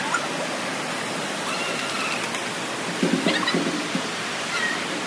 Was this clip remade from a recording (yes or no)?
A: no